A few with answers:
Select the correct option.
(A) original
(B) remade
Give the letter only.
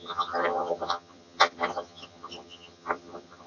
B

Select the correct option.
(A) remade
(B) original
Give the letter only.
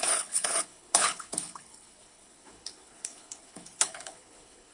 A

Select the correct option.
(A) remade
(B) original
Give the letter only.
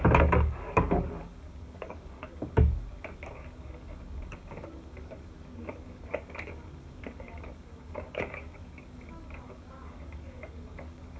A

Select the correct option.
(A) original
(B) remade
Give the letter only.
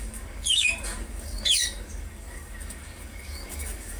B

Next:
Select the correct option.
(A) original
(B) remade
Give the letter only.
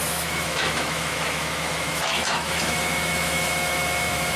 B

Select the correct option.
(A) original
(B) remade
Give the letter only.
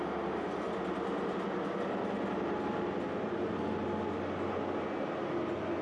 A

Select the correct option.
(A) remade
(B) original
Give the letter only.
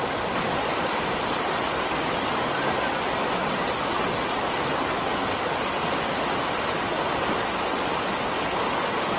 B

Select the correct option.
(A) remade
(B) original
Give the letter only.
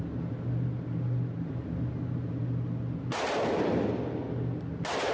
B